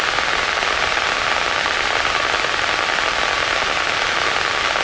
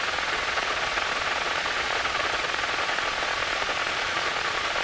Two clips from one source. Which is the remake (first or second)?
second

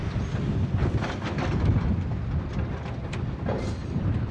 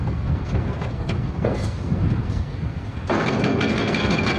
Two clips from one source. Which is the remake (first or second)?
second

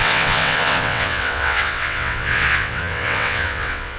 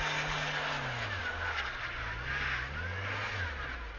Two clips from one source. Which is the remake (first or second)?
first